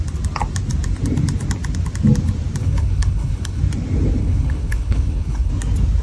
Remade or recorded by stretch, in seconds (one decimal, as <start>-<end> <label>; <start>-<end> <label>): 0.0-2.6 recorded; 2.6-3.6 remade; 3.6-4.2 recorded; 4.2-5.5 remade; 5.5-6.0 recorded